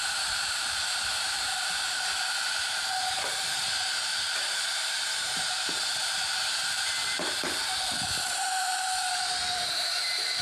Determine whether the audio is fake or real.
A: fake